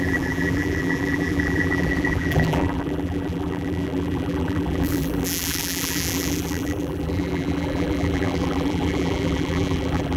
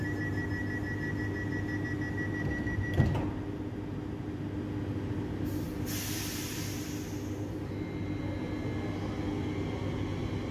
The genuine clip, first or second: second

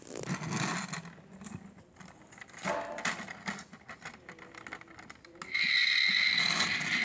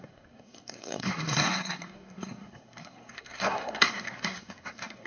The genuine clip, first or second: first